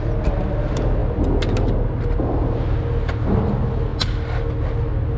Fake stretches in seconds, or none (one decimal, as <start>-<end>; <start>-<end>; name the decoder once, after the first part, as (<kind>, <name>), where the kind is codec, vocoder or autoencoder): none